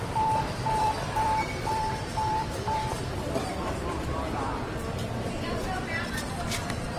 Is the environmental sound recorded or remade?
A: remade